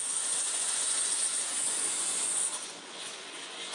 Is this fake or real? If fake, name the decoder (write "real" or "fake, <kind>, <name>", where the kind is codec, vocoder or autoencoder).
fake, vocoder, Vocos